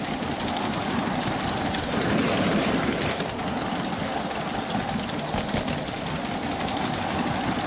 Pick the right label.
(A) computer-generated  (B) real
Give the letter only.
B